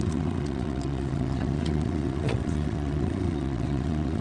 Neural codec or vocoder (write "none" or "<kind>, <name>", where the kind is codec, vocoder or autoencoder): vocoder, WaveNeXt